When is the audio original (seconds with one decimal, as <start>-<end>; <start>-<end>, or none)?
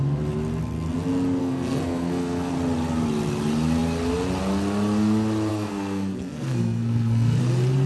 0.0-1.4; 2.5-5.5; 7.4-7.9